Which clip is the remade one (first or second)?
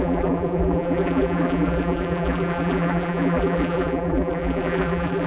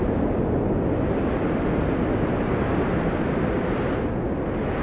first